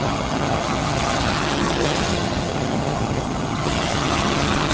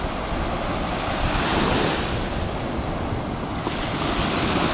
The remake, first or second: first